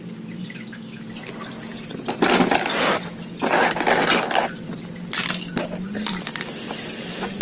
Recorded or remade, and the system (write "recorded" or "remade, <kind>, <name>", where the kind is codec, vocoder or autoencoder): recorded